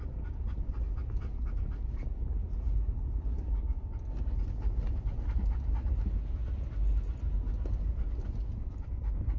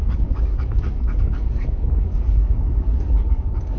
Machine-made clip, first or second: second